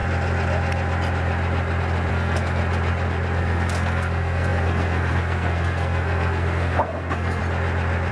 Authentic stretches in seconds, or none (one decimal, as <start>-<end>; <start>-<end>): 0.0-2.1; 2.6-3.4; 7.4-8.1